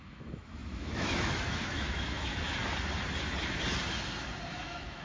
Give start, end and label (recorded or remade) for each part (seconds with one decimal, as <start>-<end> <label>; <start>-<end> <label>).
0.0-2.6 remade; 2.6-4.5 recorded; 4.5-5.0 remade